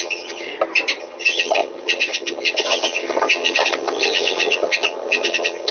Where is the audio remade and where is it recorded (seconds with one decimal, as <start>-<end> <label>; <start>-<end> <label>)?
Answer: 0.0-0.5 remade; 0.5-1.0 recorded; 1.0-5.7 remade